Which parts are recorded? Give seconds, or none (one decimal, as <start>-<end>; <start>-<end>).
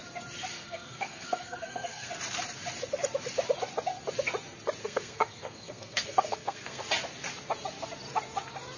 0.0-0.5; 2.1-4.8; 6.8-8.8